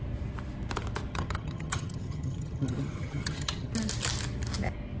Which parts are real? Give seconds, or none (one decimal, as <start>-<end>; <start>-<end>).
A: 0.0-1.1; 3.7-5.0